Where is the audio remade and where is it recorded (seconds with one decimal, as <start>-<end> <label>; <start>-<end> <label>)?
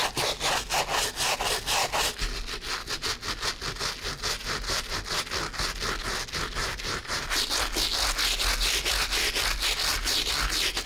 0.0-4.4 recorded; 4.4-5.0 remade; 5.0-6.6 recorded; 6.6-7.2 remade; 7.2-10.9 recorded